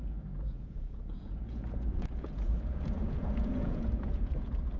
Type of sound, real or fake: fake